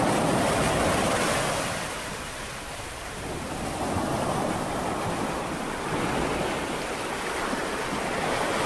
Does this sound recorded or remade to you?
recorded